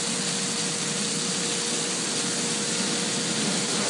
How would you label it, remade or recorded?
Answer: recorded